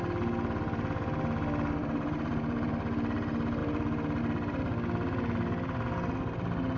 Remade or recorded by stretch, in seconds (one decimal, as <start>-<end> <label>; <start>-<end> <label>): 0.0-1.8 recorded; 1.8-2.7 remade; 2.7-6.8 recorded